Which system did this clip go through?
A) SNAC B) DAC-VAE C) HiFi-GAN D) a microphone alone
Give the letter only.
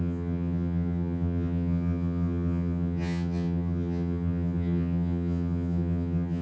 C